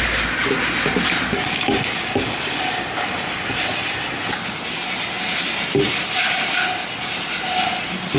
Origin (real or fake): real